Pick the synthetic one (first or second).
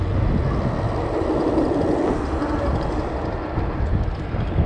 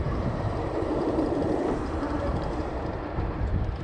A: second